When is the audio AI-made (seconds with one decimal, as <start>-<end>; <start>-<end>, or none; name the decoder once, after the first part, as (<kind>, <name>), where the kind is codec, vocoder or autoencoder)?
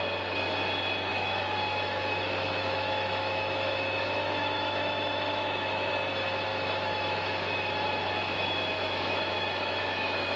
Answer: 1.1-5.9 (autoencoder, DAC-VAE); 6.5-10.4